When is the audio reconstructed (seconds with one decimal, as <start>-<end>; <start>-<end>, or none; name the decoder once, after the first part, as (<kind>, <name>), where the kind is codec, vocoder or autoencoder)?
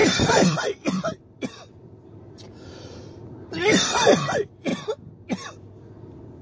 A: 0.0-3.5 (vocoder, BigVGAN v2)